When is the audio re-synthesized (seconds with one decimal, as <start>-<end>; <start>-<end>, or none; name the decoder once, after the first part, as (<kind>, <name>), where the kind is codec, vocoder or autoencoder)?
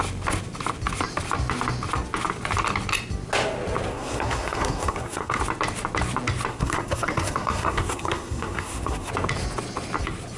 3.9-5.4 (codec, SNAC); 6.5-9.1